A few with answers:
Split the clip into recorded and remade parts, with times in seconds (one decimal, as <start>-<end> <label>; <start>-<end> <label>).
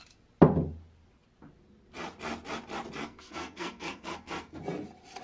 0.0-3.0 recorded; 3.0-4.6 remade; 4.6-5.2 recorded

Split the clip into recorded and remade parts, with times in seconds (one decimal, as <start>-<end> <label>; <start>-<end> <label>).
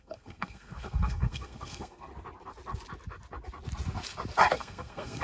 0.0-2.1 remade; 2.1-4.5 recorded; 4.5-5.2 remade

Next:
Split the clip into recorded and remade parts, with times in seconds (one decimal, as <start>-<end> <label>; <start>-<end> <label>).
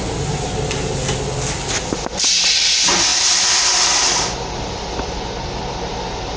0.0-3.1 recorded; 3.1-5.1 remade; 5.1-6.4 recorded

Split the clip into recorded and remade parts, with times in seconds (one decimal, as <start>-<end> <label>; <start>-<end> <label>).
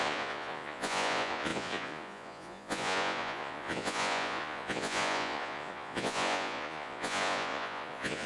0.0-8.3 remade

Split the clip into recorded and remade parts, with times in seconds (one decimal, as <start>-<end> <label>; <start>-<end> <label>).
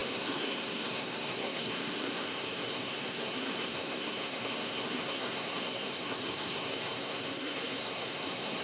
0.0-8.6 remade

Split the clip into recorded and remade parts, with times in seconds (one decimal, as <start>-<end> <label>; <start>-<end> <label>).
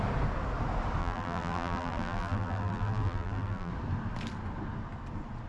0.0-1.0 recorded; 1.0-3.7 remade; 3.7-5.5 recorded